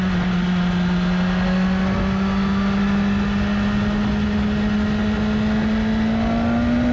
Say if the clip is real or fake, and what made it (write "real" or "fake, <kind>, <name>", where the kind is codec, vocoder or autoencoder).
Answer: real